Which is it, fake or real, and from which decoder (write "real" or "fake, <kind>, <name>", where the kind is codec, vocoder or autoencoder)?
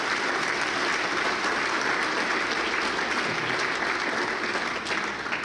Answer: real